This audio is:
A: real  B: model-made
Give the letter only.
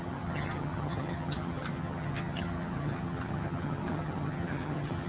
B